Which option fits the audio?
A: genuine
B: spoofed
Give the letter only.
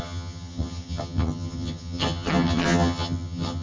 B